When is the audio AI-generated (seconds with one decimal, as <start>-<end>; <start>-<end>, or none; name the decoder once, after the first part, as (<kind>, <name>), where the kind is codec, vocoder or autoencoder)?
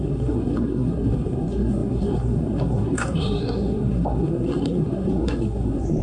0.0-6.0 (codec, SNAC)